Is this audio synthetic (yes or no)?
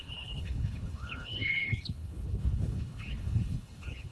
yes